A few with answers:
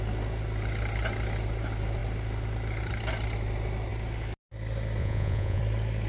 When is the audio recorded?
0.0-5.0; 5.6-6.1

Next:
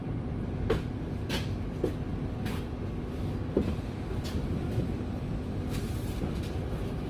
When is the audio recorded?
0.9-2.1; 5.5-7.1

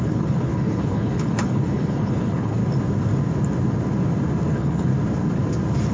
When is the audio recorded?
2.6-4.5; 4.9-5.9